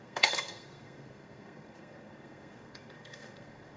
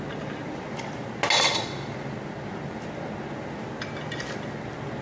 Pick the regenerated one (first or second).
first